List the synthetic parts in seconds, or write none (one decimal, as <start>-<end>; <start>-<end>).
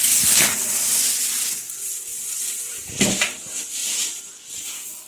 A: 2.1-2.8